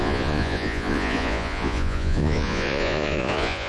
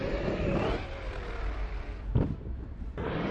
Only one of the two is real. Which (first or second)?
second